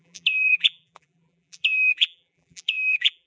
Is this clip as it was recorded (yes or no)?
no